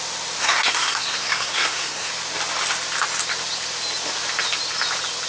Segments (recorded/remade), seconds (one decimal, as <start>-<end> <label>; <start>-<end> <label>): 0.0-0.4 recorded; 0.4-2.1 remade; 2.1-5.3 recorded